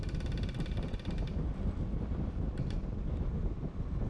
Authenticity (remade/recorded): recorded